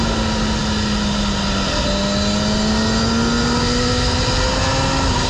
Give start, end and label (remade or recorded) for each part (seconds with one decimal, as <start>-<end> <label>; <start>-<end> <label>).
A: 0.0-5.3 recorded